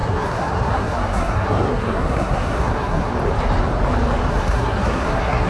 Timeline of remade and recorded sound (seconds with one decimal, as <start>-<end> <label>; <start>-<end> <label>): 0.0-3.1 remade; 3.1-4.3 recorded; 4.3-5.5 remade